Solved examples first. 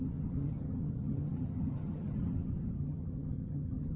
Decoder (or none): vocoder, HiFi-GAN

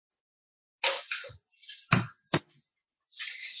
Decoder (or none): none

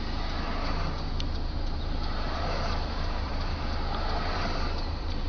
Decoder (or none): vocoder, BigVGAN v2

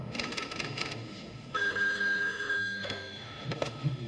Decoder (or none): autoencoder, DAC-VAE